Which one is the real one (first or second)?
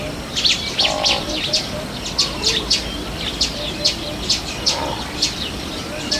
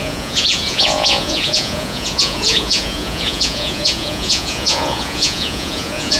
first